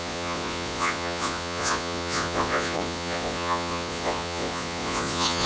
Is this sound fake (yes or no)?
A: yes